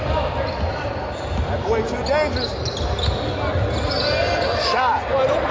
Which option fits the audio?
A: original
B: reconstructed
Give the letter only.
A